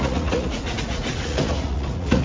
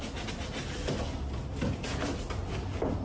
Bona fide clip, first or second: second